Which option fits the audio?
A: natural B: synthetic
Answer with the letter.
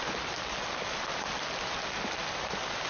A